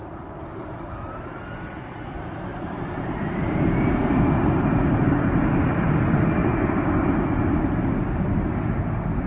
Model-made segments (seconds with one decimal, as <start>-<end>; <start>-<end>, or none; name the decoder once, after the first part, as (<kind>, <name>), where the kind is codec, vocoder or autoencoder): 0.0-0.6 (vocoder, BigVGAN v2); 2.5-5.9; 6.4-8.9